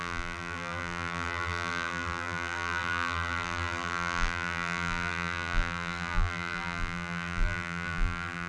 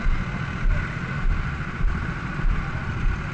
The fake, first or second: first